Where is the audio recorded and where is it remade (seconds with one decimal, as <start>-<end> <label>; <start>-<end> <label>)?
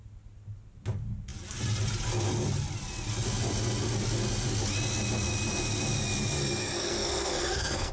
0.0-6.6 recorded; 6.6-7.9 remade